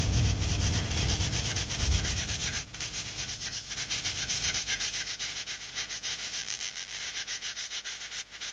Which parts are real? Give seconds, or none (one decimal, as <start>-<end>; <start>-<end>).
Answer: 0.0-6.4; 7.0-8.5